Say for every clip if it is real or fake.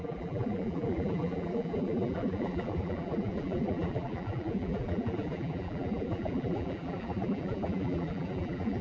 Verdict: fake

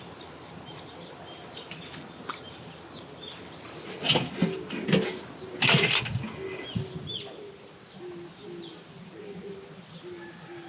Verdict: real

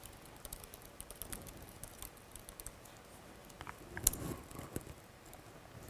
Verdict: real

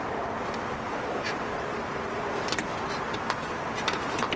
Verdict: real